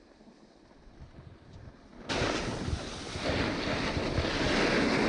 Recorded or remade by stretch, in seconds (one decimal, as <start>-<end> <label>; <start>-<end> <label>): 0.0-5.1 recorded